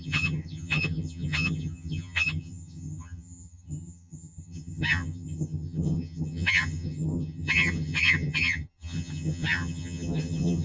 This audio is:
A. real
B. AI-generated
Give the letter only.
B